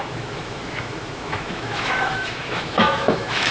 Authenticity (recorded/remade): remade